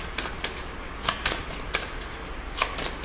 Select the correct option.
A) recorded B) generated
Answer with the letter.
B